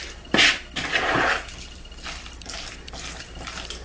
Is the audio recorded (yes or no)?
yes